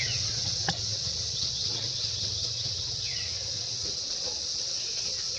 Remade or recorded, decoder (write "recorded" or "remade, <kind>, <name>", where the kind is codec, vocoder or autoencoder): remade, vocoder, WaveNeXt